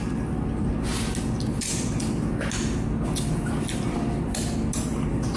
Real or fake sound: real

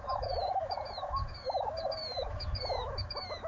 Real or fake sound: fake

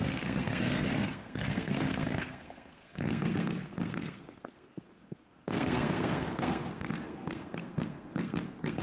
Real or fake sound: fake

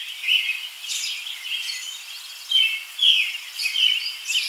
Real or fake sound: real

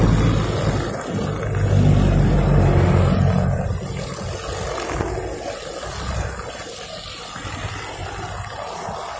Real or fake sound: real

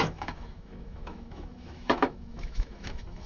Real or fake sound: fake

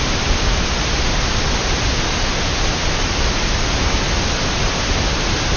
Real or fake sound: real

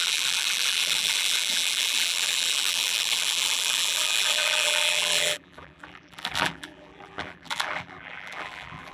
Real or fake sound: fake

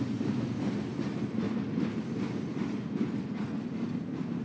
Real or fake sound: real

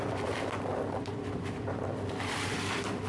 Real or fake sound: fake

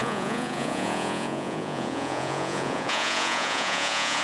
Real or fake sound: fake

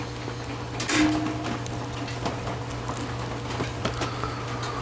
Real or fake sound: real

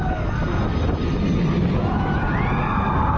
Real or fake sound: real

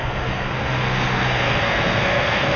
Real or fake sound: fake